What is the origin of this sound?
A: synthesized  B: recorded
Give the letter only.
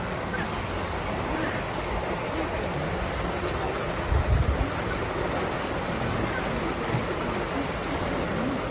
B